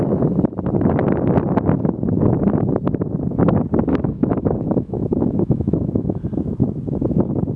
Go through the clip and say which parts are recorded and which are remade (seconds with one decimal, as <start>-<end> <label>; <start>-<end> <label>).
0.0-3.9 recorded; 3.9-6.2 remade; 6.2-7.6 recorded